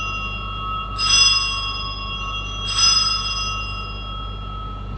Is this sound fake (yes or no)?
no